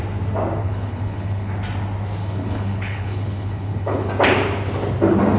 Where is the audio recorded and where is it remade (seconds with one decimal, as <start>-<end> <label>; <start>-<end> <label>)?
0.0-0.6 recorded; 0.6-1.5 remade; 1.5-2.2 recorded; 2.2-4.1 remade; 4.1-5.4 recorded